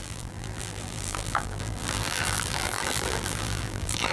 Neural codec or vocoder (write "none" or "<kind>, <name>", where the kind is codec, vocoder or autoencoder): vocoder, BigVGAN v2